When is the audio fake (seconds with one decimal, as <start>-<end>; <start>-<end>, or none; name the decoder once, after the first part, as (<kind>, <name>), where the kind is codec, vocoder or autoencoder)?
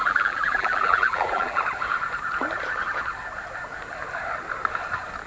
0.0-1.6 (vocoder, BigVGAN v2)